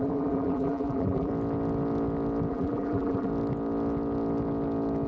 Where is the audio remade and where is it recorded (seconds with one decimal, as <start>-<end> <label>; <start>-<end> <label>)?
0.0-1.3 remade; 1.3-2.5 recorded; 2.5-3.3 remade; 3.3-5.1 recorded